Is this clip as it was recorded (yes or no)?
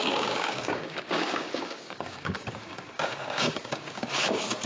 no